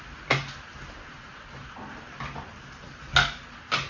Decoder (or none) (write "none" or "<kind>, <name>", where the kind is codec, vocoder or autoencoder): none